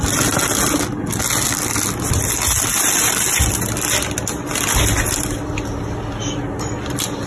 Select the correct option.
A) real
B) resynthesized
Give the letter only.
A